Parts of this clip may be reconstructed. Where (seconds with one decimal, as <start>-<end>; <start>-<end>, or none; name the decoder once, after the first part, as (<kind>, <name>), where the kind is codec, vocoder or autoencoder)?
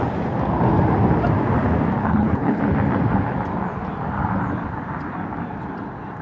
2.0-2.6 (codec, HILCodec)